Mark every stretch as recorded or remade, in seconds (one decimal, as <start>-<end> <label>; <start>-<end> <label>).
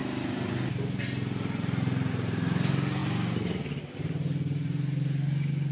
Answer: 0.0-5.7 recorded